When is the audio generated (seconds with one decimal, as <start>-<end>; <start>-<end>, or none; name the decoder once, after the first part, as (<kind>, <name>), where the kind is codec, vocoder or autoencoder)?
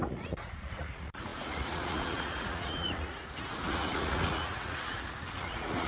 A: 0.0-5.9 (vocoder, Vocos)